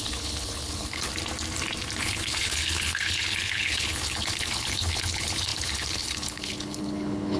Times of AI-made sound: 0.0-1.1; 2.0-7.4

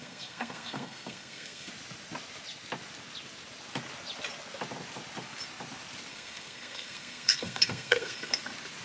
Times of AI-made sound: 0.0-1.7; 6.1-8.4